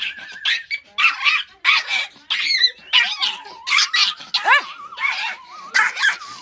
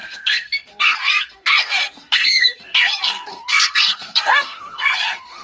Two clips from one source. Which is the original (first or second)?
first